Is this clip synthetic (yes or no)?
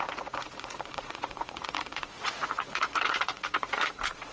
yes